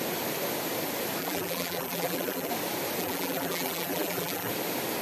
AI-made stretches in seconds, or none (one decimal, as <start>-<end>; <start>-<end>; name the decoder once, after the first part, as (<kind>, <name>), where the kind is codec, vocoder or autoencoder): 1.2-2.5 (vocoder, BigVGAN v2); 3.0-4.5